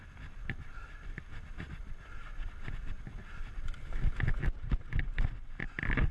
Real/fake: real